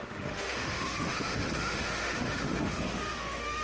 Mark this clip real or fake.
fake